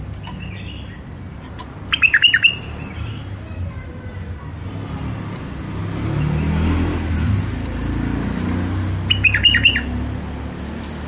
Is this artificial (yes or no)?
no